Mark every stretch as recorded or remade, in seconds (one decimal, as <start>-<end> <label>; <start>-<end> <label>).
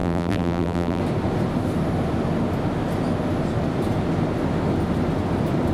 0.0-1.0 remade; 1.0-5.7 recorded